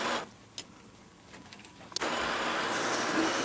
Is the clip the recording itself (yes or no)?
yes